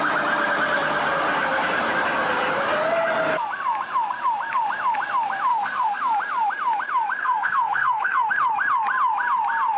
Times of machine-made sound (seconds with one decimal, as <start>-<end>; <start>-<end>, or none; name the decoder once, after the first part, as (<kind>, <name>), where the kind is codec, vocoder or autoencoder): 5.5-6.0 (codec, SNAC); 7.2-8.3